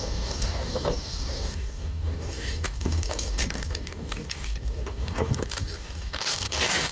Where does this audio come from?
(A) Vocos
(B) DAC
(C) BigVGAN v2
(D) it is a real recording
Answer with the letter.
B